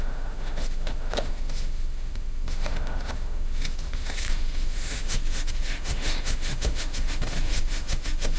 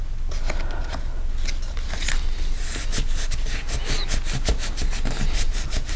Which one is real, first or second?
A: second